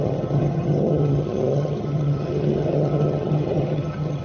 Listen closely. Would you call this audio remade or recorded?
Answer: remade